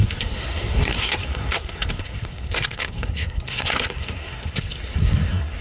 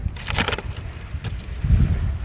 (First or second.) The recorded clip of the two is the second